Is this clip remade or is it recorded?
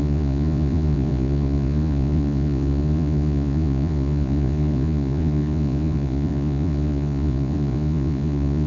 remade